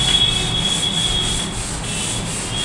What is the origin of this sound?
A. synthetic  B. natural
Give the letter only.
B